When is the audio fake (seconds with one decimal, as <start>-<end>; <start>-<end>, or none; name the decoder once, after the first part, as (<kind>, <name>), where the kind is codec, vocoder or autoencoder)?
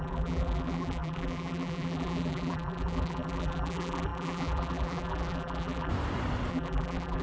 0.0-5.9 (vocoder, BigVGAN v2); 6.5-7.2